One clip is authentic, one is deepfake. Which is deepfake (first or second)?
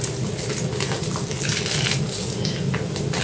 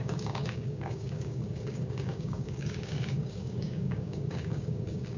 second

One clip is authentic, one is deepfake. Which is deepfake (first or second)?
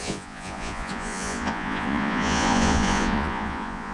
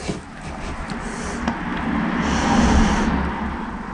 first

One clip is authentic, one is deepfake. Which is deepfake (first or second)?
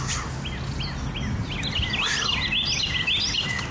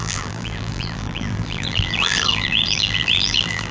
second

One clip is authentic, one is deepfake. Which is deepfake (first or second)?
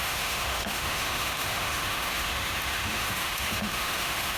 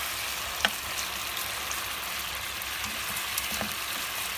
first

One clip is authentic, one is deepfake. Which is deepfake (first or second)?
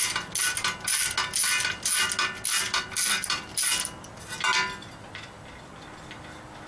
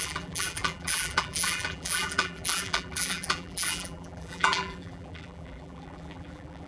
second